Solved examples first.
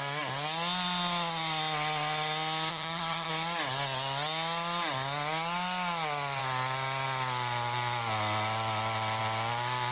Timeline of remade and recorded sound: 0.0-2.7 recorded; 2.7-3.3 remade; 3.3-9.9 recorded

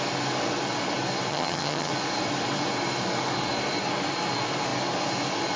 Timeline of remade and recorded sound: 0.0-1.3 recorded; 1.3-1.9 remade; 1.9-5.6 recorded

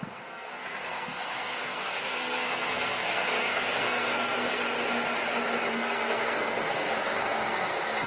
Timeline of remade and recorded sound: 0.0-4.6 remade; 4.6-5.7 recorded; 5.7-8.1 remade

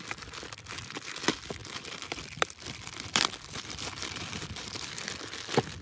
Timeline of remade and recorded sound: 0.0-1.6 recorded; 1.6-5.1 remade; 5.1-5.8 recorded